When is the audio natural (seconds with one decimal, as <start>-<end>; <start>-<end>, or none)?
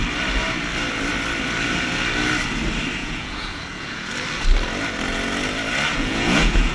0.0-3.0; 4.1-5.9